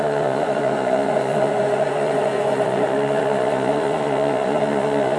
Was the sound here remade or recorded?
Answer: remade